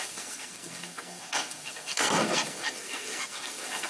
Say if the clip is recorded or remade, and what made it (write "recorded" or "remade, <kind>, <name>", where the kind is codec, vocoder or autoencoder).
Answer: remade, codec, SNAC